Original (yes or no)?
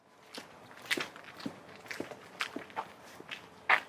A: yes